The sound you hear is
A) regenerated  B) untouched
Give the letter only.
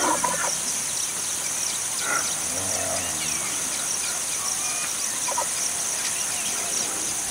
B